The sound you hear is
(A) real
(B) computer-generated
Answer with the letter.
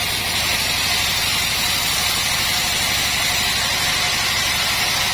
A